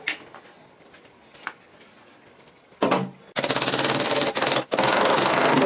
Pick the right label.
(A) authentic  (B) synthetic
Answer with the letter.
A